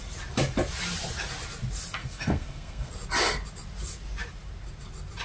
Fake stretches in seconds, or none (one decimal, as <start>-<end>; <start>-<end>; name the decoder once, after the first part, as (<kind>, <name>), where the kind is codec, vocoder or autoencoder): 2.0-2.9 (codec, SNAC)

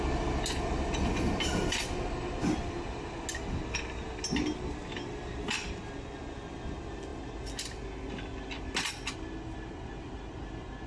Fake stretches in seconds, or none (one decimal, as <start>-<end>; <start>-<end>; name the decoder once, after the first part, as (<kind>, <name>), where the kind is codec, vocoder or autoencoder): none

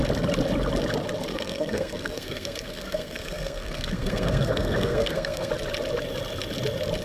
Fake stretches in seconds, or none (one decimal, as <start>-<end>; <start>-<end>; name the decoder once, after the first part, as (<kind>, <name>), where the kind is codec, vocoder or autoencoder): 1.3-5.5 (codec, SNAC)